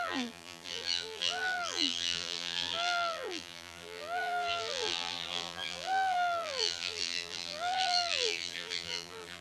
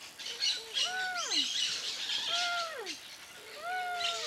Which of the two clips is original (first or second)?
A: second